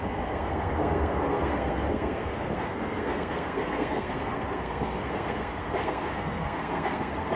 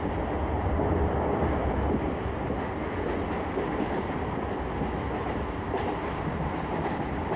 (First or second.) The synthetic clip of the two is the first